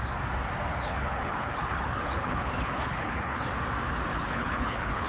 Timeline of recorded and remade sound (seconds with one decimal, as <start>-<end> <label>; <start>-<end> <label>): 0.0-0.7 recorded; 0.7-3.5 remade; 3.5-4.1 recorded; 4.1-5.1 remade

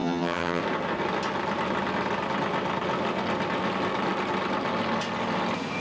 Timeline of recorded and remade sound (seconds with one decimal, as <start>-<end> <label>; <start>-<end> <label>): 0.0-0.6 remade; 0.6-5.8 recorded